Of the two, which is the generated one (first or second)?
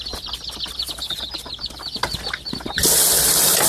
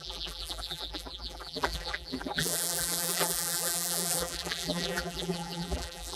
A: second